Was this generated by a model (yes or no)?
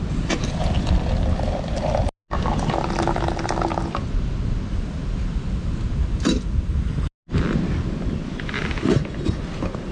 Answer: no